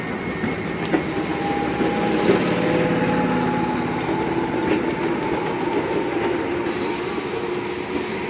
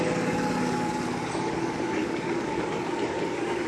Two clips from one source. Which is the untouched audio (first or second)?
first